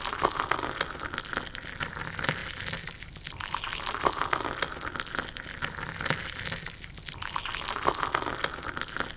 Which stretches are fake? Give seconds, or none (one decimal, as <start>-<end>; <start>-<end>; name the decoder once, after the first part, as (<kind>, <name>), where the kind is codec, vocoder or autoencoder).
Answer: none